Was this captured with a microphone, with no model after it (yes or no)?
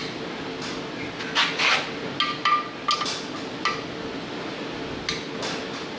yes